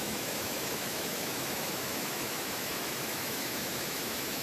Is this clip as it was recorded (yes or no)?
no